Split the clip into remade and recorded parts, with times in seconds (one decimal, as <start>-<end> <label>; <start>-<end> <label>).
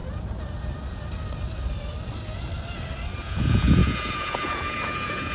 0.0-3.2 recorded; 3.2-5.3 remade